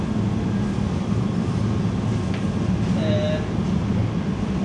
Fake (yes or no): no